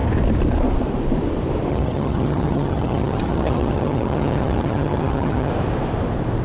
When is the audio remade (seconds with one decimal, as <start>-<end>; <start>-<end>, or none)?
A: 1.7-5.5